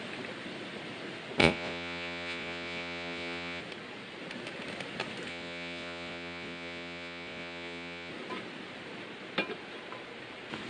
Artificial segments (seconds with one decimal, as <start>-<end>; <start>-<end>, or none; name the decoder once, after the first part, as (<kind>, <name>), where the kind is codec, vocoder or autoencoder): 1.4-3.6 (vocoder, Vocos); 5.3-8.1